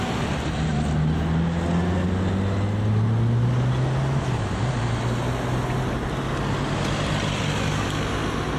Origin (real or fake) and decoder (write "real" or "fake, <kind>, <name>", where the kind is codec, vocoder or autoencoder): real